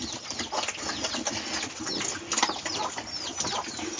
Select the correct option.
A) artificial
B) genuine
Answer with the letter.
B